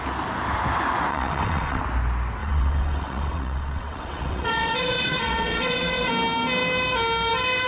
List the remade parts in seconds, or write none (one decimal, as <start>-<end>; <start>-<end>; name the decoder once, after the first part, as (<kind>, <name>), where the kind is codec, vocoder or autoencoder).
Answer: 1.1-1.8 (vocoder, WaveNeXt); 2.4-6.1